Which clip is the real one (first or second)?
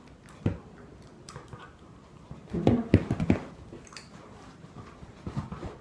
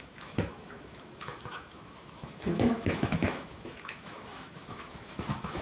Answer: first